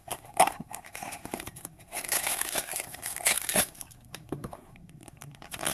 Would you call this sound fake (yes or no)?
yes